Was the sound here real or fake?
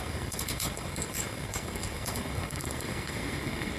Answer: fake